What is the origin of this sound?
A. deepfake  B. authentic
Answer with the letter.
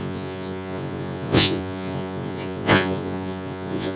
A